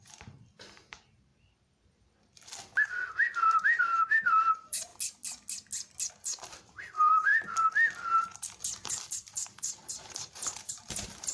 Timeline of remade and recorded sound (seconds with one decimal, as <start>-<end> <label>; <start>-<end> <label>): 0.0-1.3 remade; 1.3-3.8 recorded; 3.8-4.9 remade; 4.9-6.1 recorded; 6.1-7.3 remade; 7.3-9.0 recorded; 9.0-11.3 remade